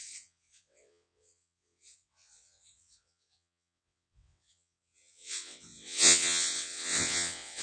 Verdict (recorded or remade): remade